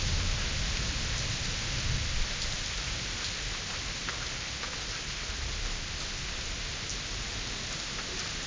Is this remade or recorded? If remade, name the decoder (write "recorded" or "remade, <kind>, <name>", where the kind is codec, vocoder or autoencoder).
recorded